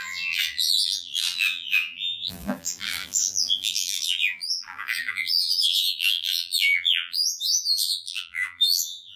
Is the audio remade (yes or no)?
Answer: yes